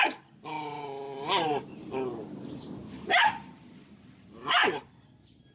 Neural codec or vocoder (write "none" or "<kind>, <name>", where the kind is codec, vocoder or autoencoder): none